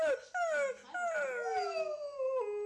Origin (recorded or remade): recorded